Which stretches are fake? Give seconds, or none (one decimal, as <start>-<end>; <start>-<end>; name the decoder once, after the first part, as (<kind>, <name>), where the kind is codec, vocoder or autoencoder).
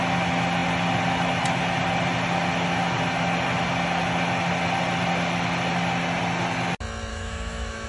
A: 7.1-7.9 (autoencoder, DAC-VAE)